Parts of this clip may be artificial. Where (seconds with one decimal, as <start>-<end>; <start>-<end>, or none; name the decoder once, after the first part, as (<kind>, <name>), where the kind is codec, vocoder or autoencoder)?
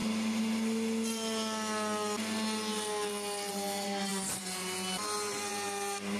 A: 3.5-6.2 (vocoder, BigVGAN v2)